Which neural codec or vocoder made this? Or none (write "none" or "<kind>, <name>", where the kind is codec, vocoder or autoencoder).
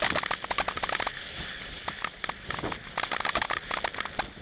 none